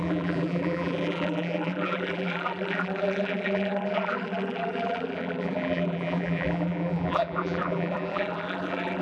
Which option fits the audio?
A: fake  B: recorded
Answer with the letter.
A